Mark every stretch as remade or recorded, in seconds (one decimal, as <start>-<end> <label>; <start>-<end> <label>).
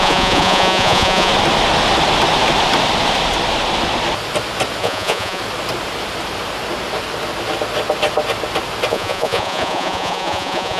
0.0-1.3 remade; 1.3-4.8 recorded; 4.8-5.4 remade; 5.4-8.9 recorded; 8.9-10.8 remade